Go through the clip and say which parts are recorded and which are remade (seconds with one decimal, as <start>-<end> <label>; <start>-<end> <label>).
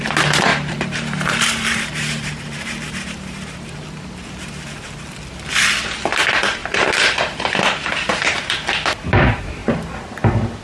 0.0-0.5 recorded; 0.5-3.7 remade; 3.7-6.6 recorded; 6.6-7.2 remade; 7.2-10.6 recorded